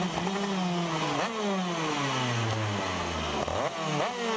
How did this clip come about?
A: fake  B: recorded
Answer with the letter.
B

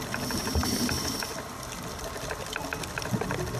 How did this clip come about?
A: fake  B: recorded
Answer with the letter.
B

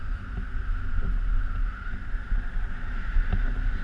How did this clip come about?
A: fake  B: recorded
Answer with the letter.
B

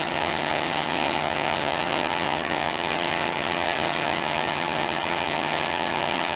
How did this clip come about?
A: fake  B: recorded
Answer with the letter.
A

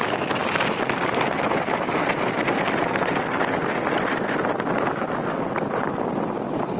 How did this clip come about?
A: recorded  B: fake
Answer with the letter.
A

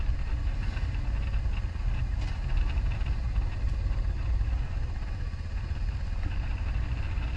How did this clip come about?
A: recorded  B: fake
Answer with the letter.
A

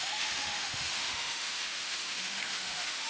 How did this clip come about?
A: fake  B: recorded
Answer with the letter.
A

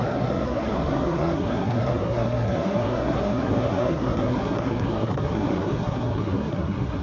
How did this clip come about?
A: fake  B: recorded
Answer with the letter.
A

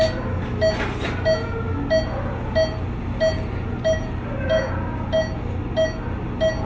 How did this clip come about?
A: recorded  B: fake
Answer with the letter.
A